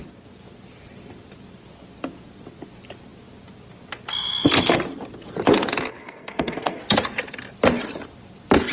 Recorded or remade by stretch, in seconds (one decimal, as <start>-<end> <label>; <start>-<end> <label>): 0.0-5.9 recorded; 5.9-6.8 remade; 6.8-8.7 recorded